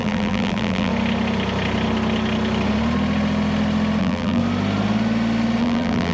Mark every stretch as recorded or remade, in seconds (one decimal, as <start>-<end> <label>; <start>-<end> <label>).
0.0-0.9 remade; 0.9-4.0 recorded; 4.0-4.4 remade; 4.4-5.6 recorded; 5.6-6.1 remade